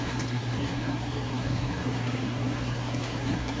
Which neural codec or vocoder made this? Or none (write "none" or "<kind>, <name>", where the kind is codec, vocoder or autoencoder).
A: codec, SNAC